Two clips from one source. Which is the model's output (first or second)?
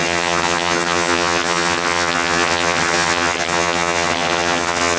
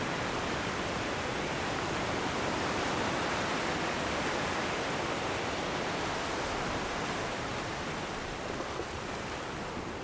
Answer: first